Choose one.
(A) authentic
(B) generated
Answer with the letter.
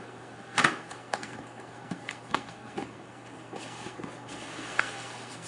B